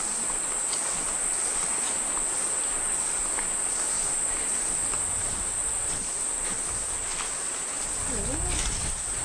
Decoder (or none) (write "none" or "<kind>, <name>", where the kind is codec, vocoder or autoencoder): none